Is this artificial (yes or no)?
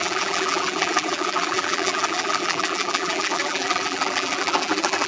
yes